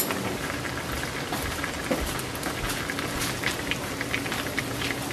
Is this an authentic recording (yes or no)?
yes